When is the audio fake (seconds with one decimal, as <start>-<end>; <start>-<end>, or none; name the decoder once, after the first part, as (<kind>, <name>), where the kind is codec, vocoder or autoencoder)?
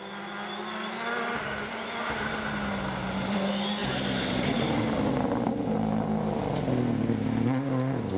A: none